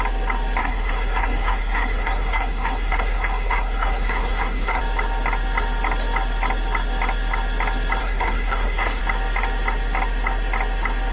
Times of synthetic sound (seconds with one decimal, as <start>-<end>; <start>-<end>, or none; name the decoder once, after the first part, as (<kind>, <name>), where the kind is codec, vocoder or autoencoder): 0.6-4.8 (codec, SNAC); 8.0-9.0